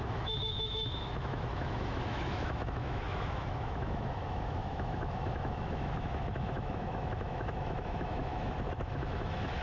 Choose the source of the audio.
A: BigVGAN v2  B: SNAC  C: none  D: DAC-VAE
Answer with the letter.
D